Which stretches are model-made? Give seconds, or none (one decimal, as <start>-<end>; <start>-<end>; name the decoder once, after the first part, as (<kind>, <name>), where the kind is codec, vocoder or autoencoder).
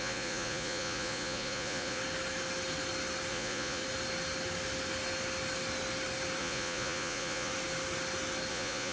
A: 0.0-2.0 (vocoder, Vocos); 3.3-3.8; 6.4-7.5; 8.5-8.9